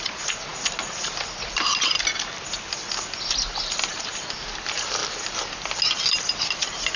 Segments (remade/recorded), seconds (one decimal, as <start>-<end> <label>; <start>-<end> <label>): 0.0-7.0 recorded